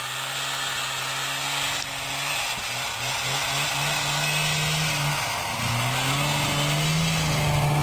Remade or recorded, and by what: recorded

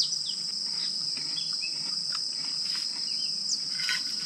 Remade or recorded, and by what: recorded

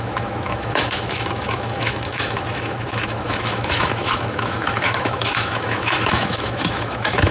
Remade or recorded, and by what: remade, autoencoder, DAC-VAE